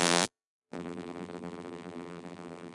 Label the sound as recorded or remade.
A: remade